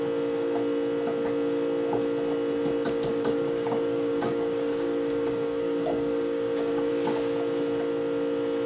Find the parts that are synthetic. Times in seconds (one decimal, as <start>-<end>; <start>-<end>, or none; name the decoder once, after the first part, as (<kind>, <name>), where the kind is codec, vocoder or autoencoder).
3.1-6.9 (codec, DAC)